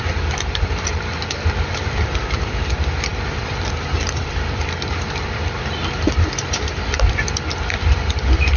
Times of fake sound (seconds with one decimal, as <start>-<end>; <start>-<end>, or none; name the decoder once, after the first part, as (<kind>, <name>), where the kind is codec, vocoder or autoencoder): 0.0-8.6 (vocoder, BigVGAN v2)